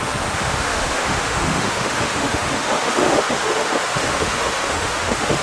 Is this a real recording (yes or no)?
no